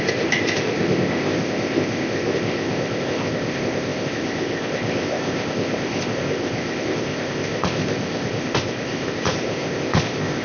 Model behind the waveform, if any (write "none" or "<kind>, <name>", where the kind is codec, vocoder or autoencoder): codec, ZipCodec